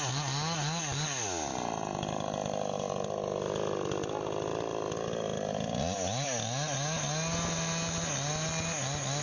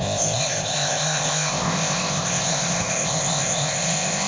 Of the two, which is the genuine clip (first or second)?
first